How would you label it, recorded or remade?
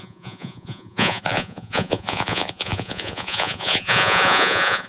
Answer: remade